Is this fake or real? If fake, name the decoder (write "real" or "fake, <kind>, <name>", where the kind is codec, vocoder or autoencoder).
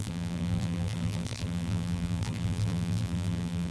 fake, vocoder, BigVGAN v2